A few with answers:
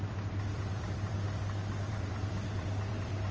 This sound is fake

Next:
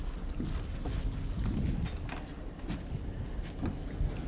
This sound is real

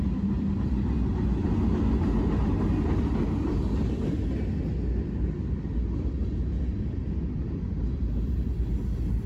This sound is real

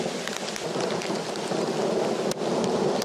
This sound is real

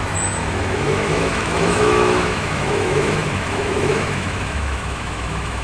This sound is fake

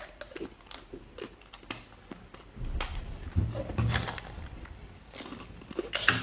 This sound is real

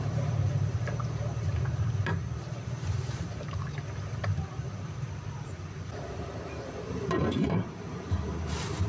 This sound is fake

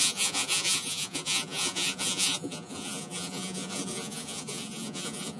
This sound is fake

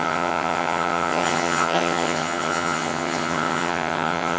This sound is fake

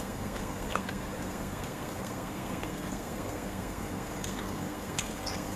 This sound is fake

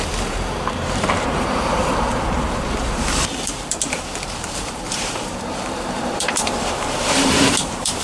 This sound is fake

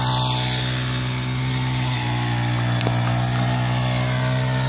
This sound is real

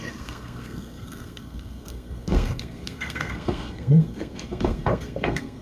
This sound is fake